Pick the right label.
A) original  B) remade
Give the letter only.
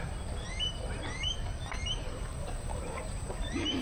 B